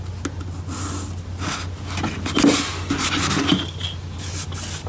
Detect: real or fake real